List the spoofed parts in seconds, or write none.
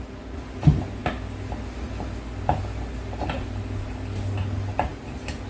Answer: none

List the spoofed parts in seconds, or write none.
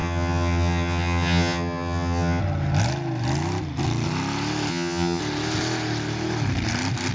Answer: 0.0-2.4 (vocoder, HiFi-GAN); 4.7-5.2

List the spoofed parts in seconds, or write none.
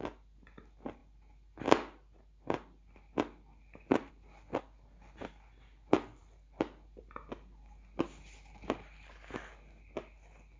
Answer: none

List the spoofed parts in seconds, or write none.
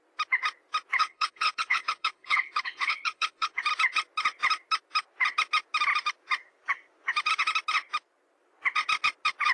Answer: 1.0-3.6 (codec, HILCodec)